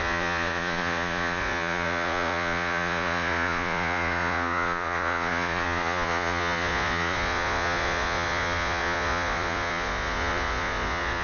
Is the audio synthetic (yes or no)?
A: yes